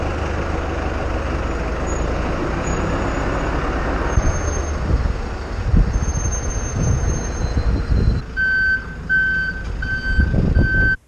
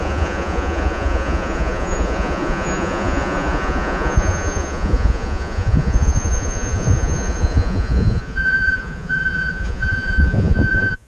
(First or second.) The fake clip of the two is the second